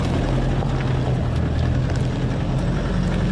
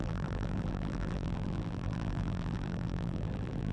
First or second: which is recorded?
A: first